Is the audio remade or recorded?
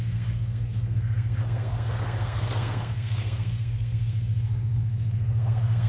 remade